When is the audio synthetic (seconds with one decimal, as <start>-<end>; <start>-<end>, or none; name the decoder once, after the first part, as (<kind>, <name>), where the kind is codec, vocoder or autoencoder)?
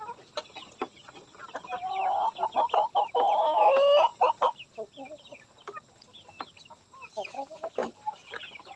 none